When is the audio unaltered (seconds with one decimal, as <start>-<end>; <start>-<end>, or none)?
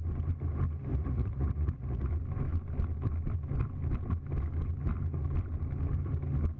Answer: 0.0-0.9; 2.1-6.6